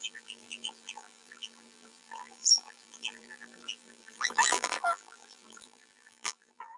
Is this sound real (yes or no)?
no